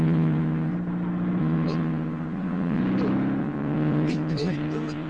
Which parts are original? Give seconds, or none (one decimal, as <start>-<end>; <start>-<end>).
0.7-1.4; 2.8-3.4